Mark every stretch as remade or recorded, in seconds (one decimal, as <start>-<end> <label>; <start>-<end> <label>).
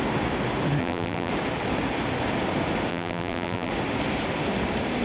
0.0-0.8 recorded; 0.8-1.3 remade; 1.3-2.9 recorded; 2.9-3.7 remade; 3.7-5.0 recorded